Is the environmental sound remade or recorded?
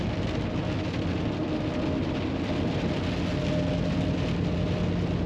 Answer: recorded